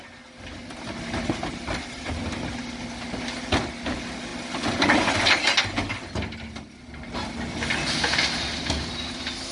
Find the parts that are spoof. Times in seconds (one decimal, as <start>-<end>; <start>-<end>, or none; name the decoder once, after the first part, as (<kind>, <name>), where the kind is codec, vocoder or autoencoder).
none